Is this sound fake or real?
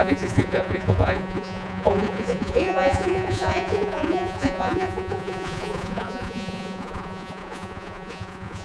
fake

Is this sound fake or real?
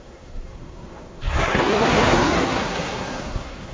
fake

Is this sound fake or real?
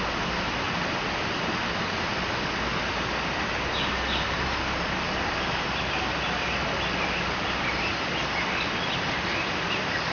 real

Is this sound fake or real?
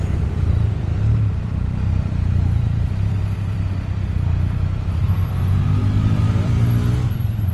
fake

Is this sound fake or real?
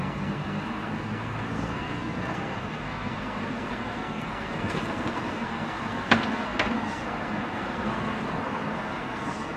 fake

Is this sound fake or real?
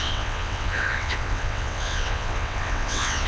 fake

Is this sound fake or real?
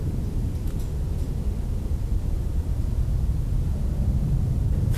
fake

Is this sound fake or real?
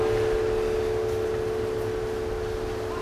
real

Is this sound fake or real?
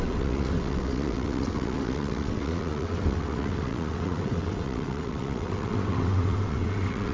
fake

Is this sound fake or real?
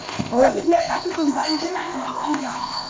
fake